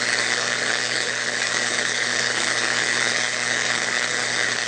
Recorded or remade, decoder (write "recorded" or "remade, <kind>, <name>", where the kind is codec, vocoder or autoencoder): remade, codec, DAC